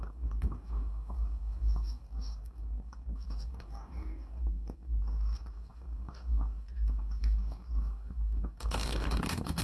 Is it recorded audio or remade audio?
remade